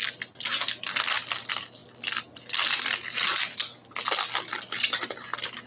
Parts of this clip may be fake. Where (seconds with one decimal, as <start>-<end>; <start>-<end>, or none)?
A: none

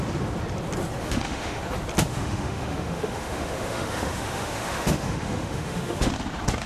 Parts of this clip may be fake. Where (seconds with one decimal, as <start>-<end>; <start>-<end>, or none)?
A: 1.0-1.6; 2.1-6.1

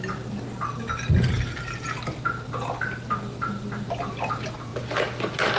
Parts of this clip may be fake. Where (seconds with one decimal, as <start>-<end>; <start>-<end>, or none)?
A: none

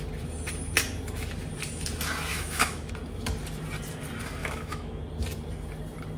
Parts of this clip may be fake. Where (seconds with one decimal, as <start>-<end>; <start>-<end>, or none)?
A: 2.3-2.9; 4.4-5.0